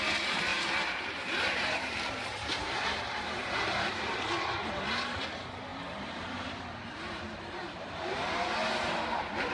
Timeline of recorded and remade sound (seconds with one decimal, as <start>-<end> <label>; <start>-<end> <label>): 0.0-9.5 remade